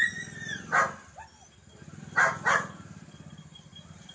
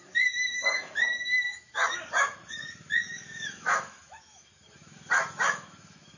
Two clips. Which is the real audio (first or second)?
first